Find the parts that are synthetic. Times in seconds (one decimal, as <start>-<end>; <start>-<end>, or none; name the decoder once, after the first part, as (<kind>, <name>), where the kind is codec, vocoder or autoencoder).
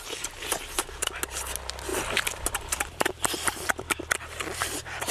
1.9-5.1 (vocoder, BigVGAN v2)